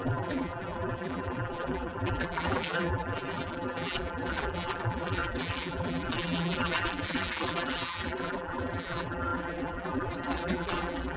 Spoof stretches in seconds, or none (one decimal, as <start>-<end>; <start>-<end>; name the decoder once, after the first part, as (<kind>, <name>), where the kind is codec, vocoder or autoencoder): 0.0-11.2 (vocoder, BigVGAN v2)